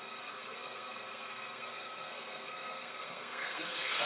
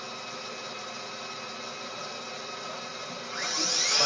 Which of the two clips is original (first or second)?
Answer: second